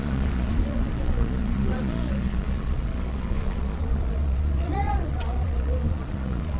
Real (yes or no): no